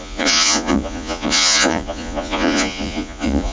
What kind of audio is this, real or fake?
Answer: fake